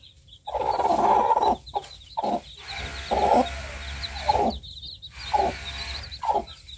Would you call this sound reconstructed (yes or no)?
no